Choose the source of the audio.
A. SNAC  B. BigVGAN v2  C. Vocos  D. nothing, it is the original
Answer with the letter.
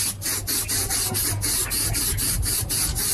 D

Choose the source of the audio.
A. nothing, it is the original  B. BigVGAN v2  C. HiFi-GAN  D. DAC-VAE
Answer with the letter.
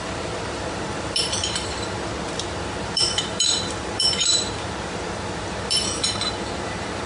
B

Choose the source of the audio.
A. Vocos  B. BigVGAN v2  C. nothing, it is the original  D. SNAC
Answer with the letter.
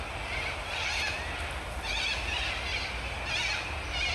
C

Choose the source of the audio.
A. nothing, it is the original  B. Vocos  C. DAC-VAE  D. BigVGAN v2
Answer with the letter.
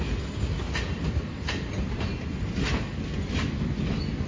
A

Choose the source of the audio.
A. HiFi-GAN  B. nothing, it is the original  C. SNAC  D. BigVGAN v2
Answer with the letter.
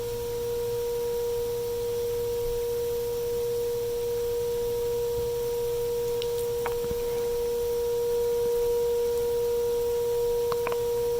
B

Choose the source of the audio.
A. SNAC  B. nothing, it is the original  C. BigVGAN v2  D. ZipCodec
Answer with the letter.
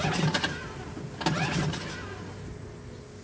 B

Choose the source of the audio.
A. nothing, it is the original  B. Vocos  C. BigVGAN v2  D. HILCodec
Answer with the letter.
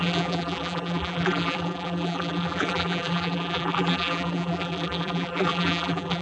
C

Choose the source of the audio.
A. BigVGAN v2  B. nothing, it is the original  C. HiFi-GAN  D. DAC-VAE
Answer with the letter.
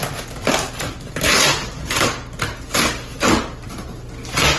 B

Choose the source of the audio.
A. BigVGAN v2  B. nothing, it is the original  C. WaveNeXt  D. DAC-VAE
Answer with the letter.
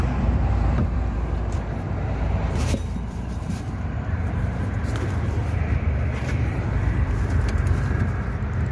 A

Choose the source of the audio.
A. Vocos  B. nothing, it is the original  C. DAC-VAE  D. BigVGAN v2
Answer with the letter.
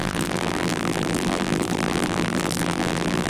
D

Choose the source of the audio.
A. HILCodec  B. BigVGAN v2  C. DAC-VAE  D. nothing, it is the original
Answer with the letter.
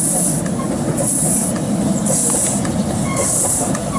D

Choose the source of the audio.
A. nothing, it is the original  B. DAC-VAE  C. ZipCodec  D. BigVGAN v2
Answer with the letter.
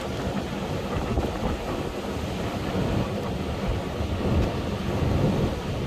A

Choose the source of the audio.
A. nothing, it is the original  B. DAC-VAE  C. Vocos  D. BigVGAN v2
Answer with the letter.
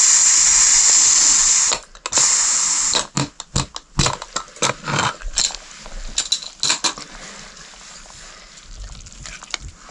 A